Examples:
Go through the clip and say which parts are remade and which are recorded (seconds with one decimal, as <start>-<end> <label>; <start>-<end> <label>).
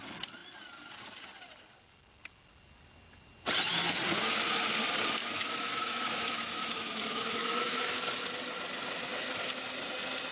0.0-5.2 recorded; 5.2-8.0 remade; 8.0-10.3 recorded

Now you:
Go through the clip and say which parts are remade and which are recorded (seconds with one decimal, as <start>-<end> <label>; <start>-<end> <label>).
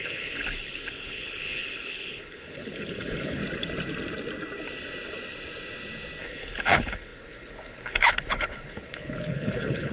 0.0-3.4 remade; 3.4-6.2 recorded; 6.2-9.9 remade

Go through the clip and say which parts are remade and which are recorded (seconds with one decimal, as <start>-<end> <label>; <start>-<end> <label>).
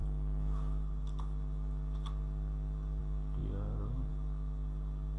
0.0-5.2 recorded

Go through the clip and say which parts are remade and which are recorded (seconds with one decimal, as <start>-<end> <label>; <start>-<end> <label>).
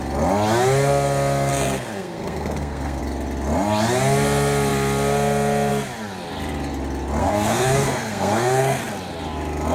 0.0-1.5 recorded; 1.5-3.0 remade; 3.0-7.2 recorded; 7.2-8.8 remade; 8.8-9.7 recorded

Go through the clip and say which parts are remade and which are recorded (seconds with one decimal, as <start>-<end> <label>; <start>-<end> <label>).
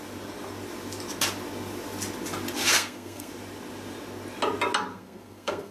0.0-2.7 recorded; 2.7-3.3 remade; 3.3-4.9 recorded; 4.9-5.7 remade